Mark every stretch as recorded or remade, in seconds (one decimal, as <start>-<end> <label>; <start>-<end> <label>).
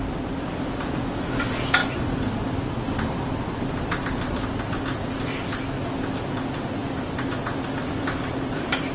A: 0.0-8.9 recorded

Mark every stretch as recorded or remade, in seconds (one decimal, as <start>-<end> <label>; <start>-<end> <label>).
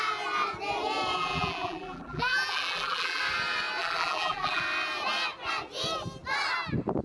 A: 0.0-1.2 recorded; 1.2-3.2 remade; 3.2-3.8 recorded; 3.8-4.6 remade; 4.6-7.0 recorded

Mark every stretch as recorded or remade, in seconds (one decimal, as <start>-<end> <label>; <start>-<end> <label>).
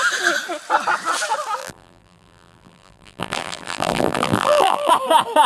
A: 0.0-1.6 recorded; 1.6-4.9 remade; 4.9-5.5 recorded